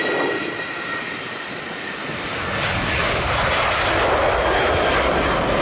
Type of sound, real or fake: real